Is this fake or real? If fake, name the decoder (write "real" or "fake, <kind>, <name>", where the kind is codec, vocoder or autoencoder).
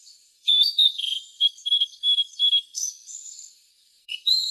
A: fake, codec, SNAC